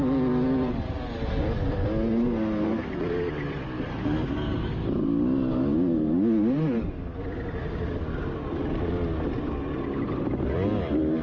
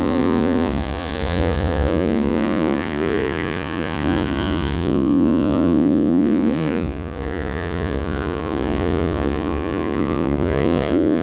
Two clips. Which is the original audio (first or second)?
first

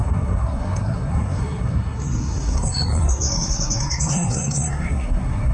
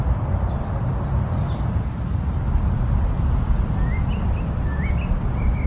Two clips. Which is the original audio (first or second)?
second